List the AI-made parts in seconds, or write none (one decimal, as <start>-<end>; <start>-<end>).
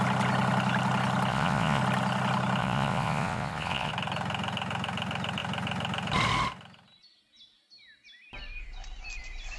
1.3-1.8; 2.6-3.9